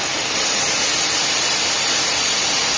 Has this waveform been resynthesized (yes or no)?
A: no